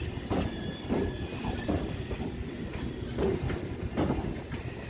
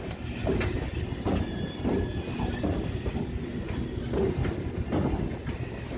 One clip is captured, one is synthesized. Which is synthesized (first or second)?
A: first